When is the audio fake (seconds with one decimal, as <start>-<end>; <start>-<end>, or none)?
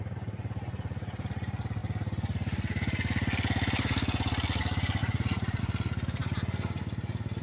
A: 5.0-5.6